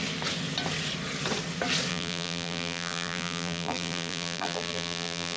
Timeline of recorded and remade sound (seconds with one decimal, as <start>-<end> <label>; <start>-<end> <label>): 0.0-1.9 recorded; 1.9-5.4 remade